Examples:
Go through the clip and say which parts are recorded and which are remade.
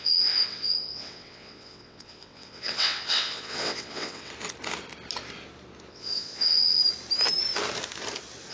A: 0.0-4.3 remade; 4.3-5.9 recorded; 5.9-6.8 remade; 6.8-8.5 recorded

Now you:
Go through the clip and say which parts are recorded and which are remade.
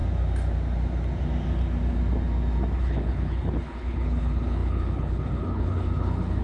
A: 0.0-2.8 recorded; 2.8-6.4 remade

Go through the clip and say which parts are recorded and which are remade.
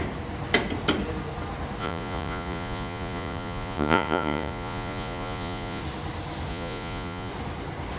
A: 0.0-1.8 recorded; 1.8-5.8 remade; 5.8-6.5 recorded; 6.5-7.3 remade; 7.3-8.0 recorded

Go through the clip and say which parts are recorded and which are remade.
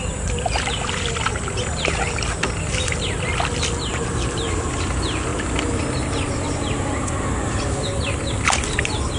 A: 0.0-9.2 recorded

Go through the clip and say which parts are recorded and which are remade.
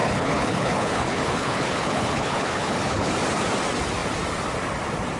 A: 0.0-3.1 remade; 3.1-5.2 recorded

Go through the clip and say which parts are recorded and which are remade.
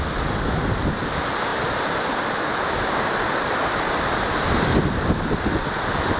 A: 0.0-6.2 recorded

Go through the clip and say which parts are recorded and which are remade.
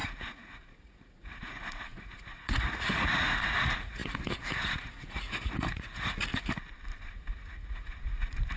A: 0.0-6.3 remade; 6.3-7.0 recorded; 7.0-8.6 remade